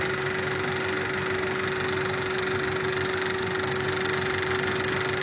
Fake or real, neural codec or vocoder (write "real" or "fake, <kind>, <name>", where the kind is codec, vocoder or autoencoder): real